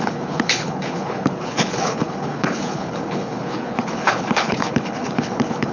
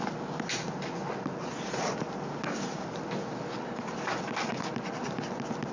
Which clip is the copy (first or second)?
first